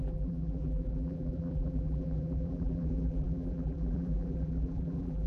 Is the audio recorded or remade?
remade